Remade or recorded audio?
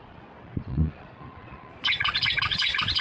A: remade